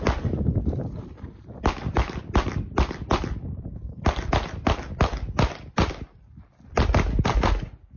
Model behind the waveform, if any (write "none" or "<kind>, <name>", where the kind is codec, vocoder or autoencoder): none